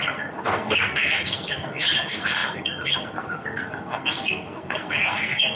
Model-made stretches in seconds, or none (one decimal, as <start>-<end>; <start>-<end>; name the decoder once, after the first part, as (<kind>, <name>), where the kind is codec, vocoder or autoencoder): 0.0-5.6 (codec, SNAC)